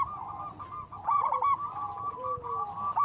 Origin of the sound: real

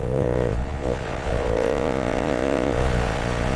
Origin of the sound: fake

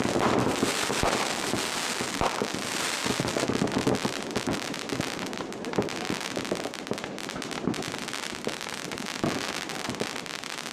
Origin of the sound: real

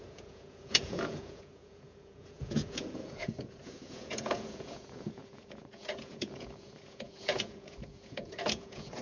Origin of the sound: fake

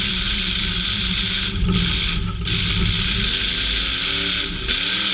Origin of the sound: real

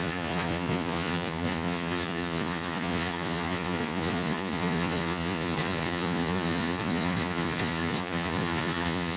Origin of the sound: fake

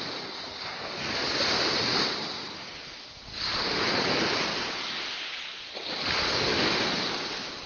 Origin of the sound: real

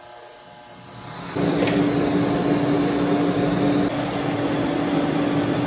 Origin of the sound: real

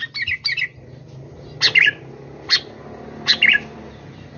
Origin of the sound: real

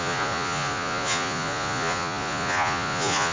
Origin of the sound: fake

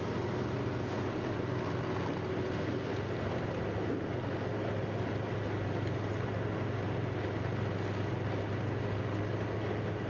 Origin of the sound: real